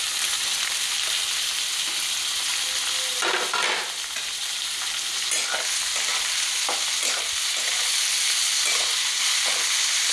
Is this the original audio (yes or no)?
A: yes